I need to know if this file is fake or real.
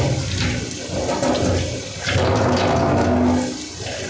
real